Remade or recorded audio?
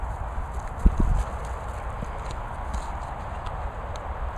recorded